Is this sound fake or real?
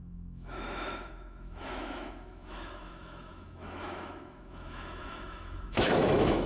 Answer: fake